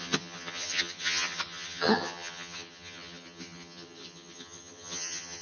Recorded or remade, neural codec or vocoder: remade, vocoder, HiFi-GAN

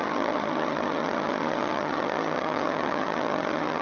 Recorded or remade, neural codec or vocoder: remade, vocoder, HiFi-GAN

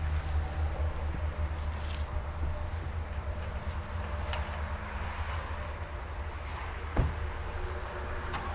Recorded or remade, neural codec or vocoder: recorded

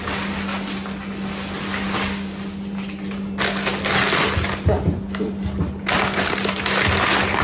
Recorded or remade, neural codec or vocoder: recorded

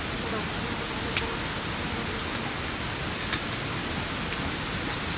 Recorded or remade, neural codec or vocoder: recorded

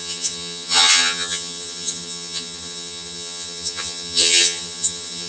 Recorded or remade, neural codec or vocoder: remade, vocoder, HiFi-GAN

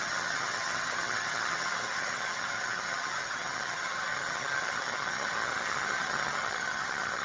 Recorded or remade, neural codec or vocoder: remade, vocoder, HiFi-GAN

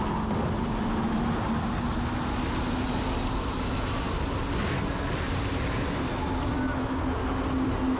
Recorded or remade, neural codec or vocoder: recorded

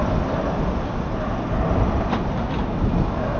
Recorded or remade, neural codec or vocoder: recorded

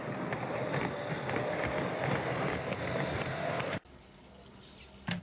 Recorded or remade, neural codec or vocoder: recorded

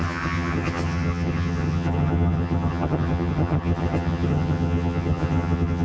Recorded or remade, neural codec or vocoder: remade, vocoder, HiFi-GAN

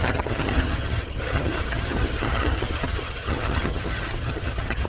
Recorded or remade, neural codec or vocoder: remade, vocoder, HiFi-GAN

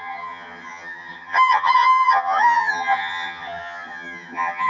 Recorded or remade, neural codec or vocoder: remade, vocoder, HiFi-GAN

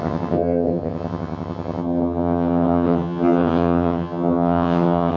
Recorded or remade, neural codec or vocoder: remade, vocoder, HiFi-GAN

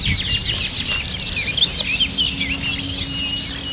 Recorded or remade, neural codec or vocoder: recorded